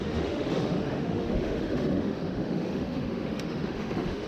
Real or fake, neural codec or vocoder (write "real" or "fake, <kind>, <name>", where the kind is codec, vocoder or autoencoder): fake, autoencoder, DAC-VAE